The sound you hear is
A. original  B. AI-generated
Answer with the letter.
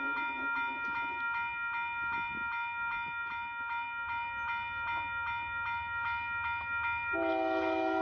A